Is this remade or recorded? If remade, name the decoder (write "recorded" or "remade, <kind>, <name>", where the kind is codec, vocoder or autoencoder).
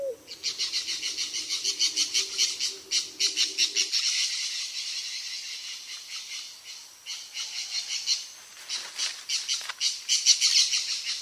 recorded